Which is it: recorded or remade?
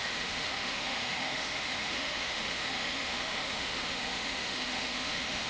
remade